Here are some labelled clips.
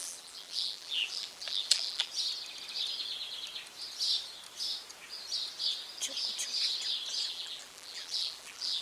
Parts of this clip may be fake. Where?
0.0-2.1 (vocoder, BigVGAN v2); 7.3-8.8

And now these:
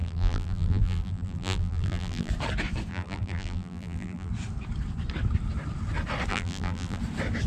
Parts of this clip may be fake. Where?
0.0-2.3 (vocoder, BigVGAN v2); 2.9-4.3; 6.3-7.0

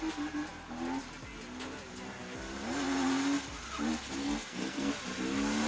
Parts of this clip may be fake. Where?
4.2-4.9 (codec, SNAC)